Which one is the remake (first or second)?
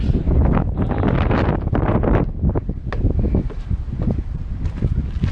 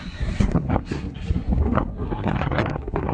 second